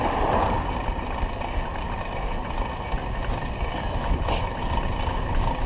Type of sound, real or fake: real